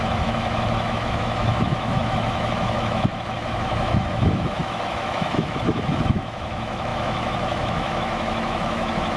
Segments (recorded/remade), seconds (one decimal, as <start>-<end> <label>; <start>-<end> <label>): 0.0-9.2 remade